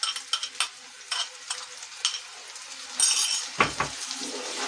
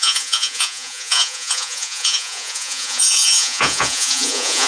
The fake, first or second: second